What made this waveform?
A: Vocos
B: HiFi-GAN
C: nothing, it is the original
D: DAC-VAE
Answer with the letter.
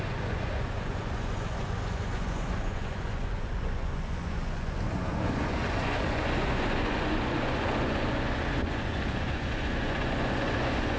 A